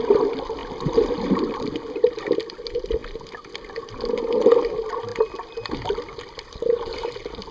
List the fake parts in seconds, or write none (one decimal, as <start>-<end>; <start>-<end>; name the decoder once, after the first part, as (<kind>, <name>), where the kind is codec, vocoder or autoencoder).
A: none